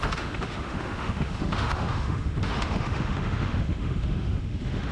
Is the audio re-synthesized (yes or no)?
yes